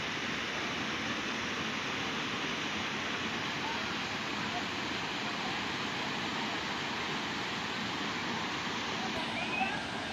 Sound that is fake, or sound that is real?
real